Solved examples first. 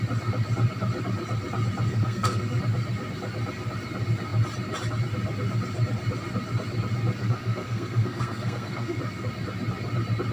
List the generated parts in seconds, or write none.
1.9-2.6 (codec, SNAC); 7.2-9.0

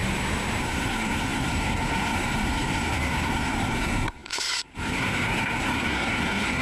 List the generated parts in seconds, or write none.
0.6-6.6 (codec, SNAC)